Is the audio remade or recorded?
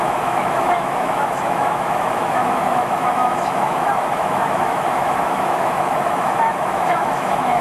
remade